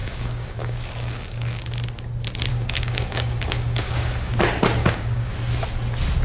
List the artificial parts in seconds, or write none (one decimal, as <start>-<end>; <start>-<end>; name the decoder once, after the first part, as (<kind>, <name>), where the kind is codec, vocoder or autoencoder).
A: 0.0-1.6 (codec, DAC); 2.5-4.3; 4.8-5.3

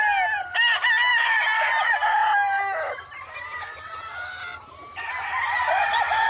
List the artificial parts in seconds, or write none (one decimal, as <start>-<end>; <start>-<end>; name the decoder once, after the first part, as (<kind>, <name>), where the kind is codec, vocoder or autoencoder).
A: none

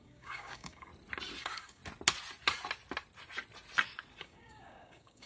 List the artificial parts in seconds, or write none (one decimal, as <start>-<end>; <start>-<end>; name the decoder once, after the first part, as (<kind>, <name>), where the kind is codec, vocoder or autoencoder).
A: 0.0-0.9 (codec, DAC); 1.4-1.8; 4.2-5.3

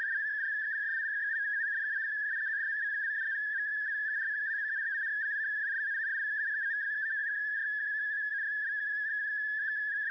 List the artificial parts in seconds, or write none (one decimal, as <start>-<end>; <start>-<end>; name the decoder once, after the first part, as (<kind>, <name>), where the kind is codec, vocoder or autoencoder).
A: 0.0-4.9 (codec, DAC); 6.4-8.3; 8.8-10.1

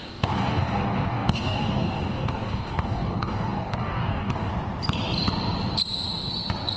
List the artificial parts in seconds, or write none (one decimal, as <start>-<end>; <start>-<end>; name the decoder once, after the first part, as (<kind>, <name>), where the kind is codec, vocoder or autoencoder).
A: 0.0-4.5 (codec, DAC)